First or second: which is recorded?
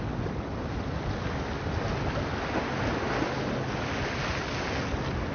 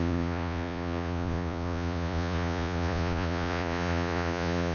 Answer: first